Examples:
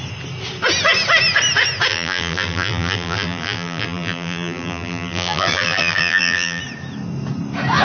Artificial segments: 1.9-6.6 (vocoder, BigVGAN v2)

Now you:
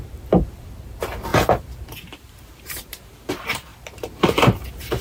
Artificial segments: 0.0-5.0 (vocoder, BigVGAN v2)

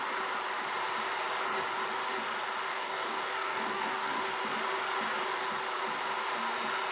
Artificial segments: 2.7-4.2 (codec, DAC)